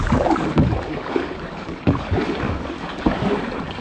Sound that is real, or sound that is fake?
fake